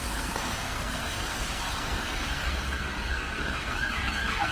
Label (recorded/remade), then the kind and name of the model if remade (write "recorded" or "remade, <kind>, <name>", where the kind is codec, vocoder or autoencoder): remade, codec, SNAC